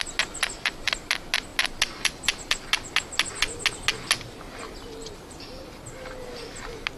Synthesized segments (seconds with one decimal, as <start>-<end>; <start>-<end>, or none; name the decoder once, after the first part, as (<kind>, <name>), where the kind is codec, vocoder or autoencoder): none